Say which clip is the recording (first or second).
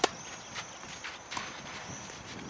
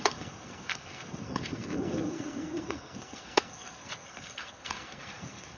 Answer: first